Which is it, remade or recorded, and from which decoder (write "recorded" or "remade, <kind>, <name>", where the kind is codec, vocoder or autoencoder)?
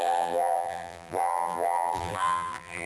remade, vocoder, BigVGAN v2